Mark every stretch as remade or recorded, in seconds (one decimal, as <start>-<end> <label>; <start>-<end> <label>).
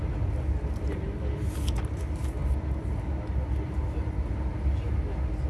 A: 0.0-5.5 recorded